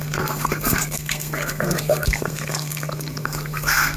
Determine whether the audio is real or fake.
fake